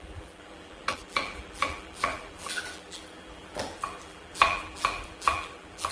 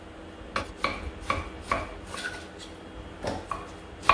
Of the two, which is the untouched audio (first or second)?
second